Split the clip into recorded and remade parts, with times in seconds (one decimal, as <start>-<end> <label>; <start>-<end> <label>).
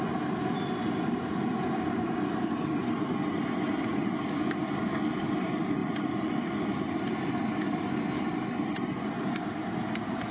0.0-10.3 recorded